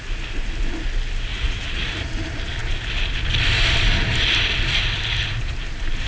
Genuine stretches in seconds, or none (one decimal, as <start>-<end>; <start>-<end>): 0.0-1.3; 2.0-6.1